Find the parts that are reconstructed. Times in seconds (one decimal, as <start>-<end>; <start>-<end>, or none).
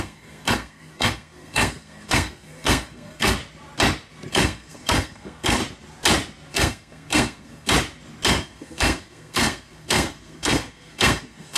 0.0-3.4; 4.3-5.6; 6.5-7.7; 8.3-11.6